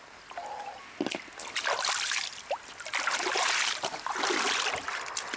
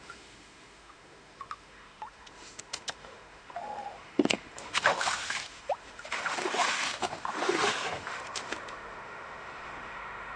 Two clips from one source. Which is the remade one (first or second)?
second